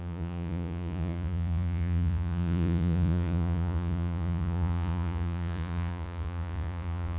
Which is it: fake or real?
fake